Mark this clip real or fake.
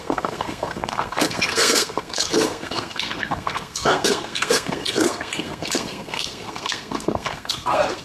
fake